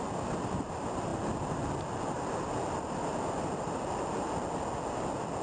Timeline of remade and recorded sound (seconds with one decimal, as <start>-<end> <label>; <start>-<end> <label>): 0.0-5.4 recorded